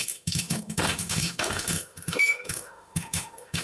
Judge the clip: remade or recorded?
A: remade